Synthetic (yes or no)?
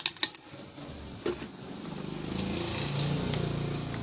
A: no